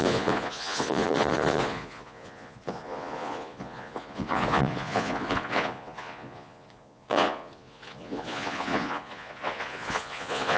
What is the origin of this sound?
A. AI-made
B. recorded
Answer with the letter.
A